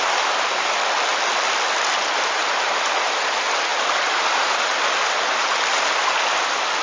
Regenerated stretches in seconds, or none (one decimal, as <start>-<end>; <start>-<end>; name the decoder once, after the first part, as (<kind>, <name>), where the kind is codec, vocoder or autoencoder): none